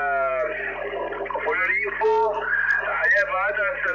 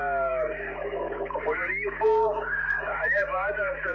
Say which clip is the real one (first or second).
first